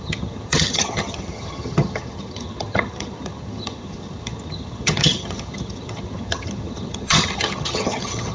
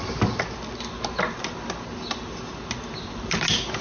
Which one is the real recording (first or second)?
second